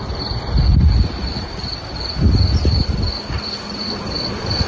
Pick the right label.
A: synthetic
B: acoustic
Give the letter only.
B